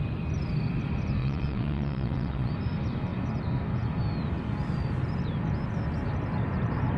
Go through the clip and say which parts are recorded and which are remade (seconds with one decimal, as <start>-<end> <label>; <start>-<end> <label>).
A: 0.0-1.2 recorded; 1.2-2.5 remade; 2.5-7.0 recorded